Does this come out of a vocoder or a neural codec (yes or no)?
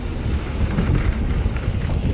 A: no